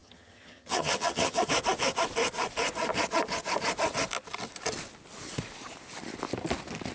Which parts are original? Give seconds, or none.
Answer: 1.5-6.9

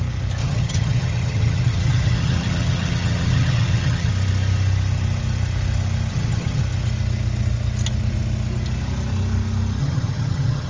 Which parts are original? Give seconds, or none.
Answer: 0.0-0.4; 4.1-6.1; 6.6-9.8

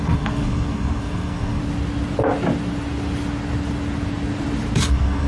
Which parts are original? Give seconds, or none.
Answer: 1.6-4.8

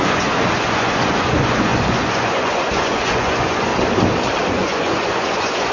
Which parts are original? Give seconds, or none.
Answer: 3.7-4.5

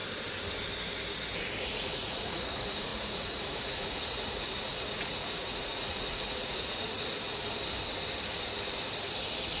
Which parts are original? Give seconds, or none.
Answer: 0.0-1.6; 7.1-9.6

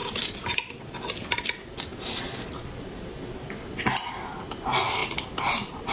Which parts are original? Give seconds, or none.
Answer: 3.5-5.9

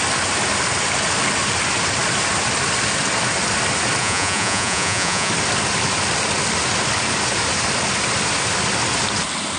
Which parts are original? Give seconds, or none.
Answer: 0.0-4.0; 5.3-9.6